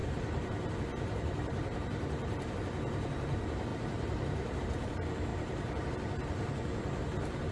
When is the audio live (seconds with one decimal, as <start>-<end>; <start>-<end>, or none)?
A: 2.6-3.7; 4.6-5.3; 5.9-7.5